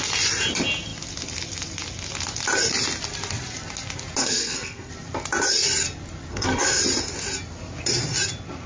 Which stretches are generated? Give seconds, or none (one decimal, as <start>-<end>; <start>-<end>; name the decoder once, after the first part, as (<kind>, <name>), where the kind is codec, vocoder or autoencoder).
4.2-4.9 (codec, SNAC); 6.3-6.8